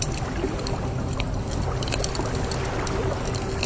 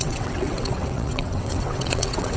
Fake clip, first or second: second